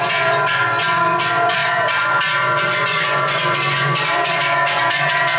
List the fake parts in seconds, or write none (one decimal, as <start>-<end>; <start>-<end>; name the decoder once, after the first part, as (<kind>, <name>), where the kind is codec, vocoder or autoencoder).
0.0-5.4 (vocoder, Vocos)

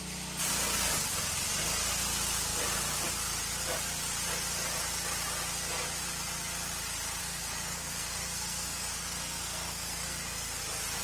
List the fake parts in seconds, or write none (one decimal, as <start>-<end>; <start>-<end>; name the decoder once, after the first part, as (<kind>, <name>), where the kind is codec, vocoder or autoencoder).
7.2-10.6 (codec, SNAC)

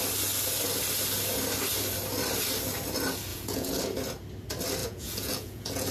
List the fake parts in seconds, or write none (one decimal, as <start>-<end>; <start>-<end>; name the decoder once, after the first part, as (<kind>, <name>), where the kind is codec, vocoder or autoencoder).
3.3-3.8 (vocoder, Vocos); 4.8-5.9